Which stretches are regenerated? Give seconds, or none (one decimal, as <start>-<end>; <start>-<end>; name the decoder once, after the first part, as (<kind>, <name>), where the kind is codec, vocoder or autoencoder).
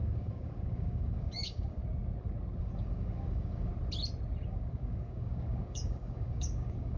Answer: 0.0-1.8 (codec, DAC); 2.6-3.7; 4.5-7.0